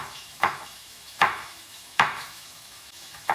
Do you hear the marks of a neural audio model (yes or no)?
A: yes